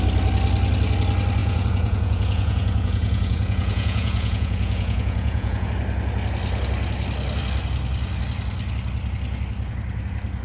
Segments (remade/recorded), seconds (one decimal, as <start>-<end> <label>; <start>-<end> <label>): 0.0-1.4 recorded; 1.4-5.7 remade; 5.7-10.4 recorded